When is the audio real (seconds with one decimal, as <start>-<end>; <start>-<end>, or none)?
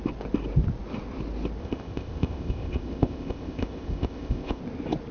0.0-1.6; 4.6-5.1